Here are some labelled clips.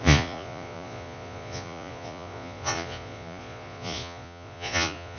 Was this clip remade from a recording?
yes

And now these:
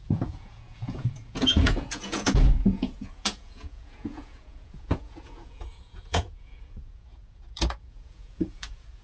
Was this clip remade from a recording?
yes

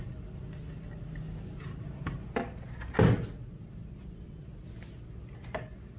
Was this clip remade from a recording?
no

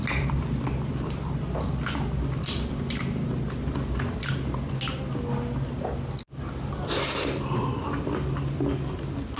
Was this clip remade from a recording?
no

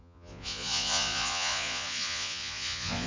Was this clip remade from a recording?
yes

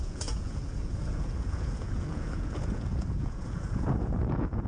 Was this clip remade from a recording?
yes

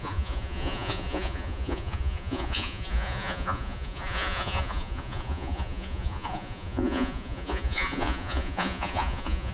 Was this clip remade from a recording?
yes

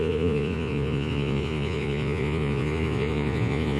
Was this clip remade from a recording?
yes